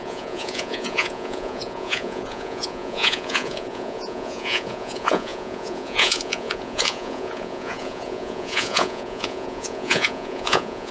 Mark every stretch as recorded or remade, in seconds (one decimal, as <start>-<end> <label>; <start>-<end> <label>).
0.0-10.9 remade